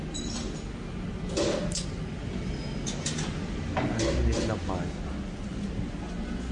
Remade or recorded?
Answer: recorded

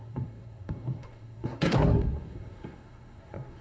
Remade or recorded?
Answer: remade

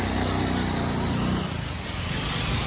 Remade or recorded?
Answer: recorded